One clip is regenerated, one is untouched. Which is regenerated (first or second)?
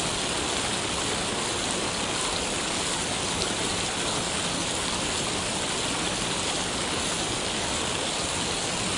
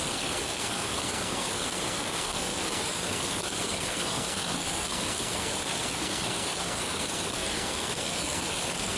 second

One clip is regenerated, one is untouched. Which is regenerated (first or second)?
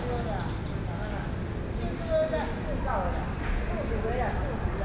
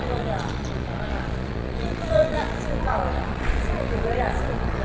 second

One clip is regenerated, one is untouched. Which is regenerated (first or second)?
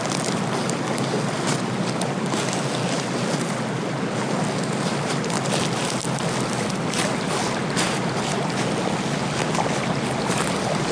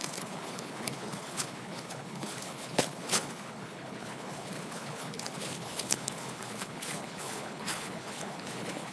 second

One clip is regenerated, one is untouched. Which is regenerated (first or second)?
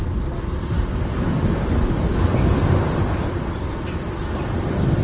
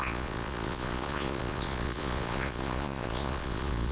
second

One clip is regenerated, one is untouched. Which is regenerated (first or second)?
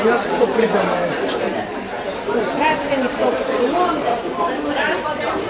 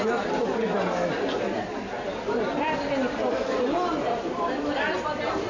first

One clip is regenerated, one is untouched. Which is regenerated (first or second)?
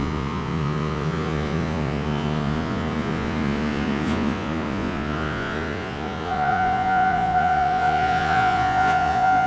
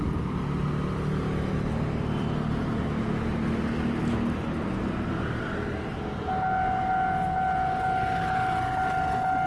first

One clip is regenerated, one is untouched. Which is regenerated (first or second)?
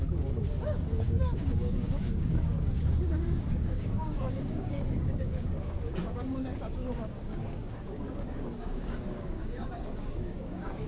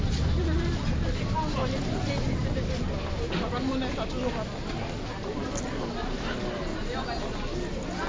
first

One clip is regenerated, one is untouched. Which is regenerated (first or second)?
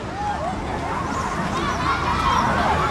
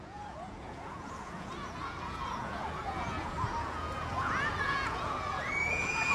second